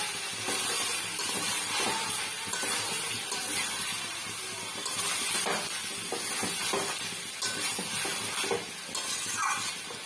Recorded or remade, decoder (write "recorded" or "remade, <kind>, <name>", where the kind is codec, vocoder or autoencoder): recorded